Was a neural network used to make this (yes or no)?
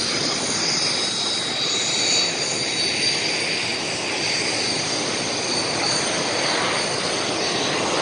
no